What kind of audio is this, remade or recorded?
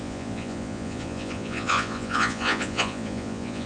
remade